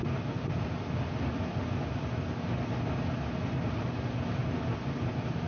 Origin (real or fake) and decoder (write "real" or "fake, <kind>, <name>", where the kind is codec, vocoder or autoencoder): real